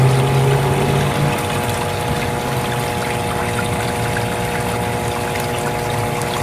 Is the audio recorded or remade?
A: recorded